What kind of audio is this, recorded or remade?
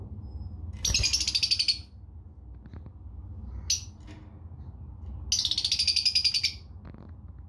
recorded